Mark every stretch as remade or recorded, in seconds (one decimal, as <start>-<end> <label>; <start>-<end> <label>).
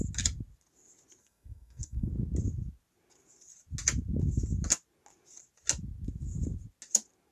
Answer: 0.0-1.2 recorded; 1.2-2.1 remade; 2.1-7.3 recorded